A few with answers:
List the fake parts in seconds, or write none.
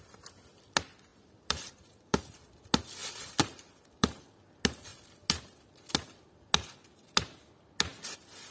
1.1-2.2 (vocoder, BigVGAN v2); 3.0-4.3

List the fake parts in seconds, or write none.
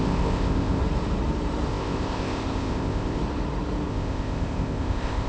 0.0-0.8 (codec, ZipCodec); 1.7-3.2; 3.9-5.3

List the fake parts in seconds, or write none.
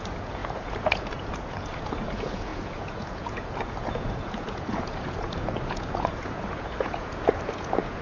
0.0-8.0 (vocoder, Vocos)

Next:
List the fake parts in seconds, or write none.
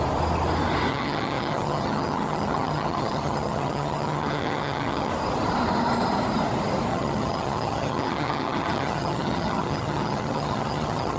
0.9-5.1 (vocoder, HiFi-GAN); 6.9-11.2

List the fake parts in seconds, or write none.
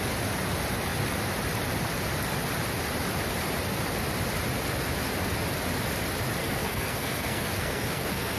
6.4-8.4 (codec, SNAC)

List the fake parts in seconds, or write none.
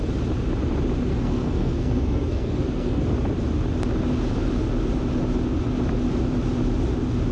1.1-3.0 (codec, SNAC)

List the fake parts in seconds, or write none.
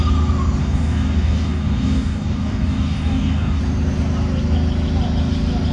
0.6-3.6 (codec, DAC)